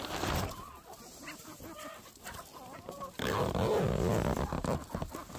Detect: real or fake real